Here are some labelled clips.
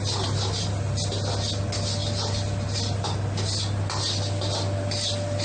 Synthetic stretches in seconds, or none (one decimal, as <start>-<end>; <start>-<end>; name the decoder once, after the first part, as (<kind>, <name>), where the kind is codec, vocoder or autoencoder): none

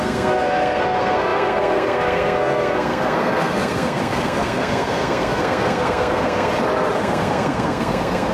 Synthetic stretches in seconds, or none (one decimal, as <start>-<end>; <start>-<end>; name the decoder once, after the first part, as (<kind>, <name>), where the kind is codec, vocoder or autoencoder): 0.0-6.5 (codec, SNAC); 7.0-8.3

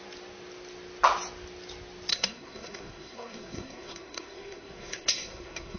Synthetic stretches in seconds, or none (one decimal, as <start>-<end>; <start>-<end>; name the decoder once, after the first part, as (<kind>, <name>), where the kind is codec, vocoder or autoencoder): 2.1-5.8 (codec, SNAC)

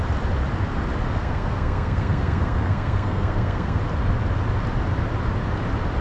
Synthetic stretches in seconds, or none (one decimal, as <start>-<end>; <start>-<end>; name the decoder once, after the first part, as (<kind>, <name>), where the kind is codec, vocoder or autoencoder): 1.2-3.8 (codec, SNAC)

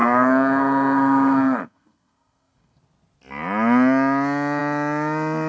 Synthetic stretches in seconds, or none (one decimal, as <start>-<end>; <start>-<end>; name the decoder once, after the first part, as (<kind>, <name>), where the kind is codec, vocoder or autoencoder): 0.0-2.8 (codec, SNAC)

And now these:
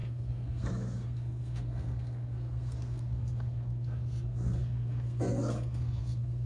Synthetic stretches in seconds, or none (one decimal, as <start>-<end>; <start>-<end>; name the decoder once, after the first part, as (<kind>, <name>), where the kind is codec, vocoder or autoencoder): 0.0-6.5 (codec, SNAC)